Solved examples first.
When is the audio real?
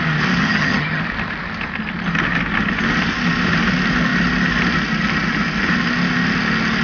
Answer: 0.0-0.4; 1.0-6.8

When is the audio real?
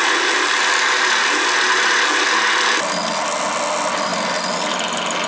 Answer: 0.0-5.3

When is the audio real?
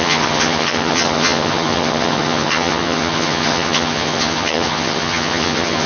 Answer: none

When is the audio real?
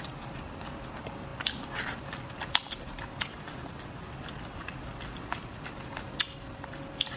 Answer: 0.0-7.2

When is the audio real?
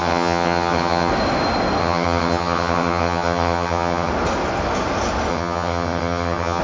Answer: 1.1-1.8; 4.1-5.3